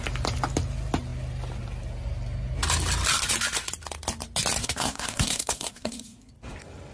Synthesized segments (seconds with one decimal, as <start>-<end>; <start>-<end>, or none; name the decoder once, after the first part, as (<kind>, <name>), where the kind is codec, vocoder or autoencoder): 4.6-6.3 (codec, SNAC)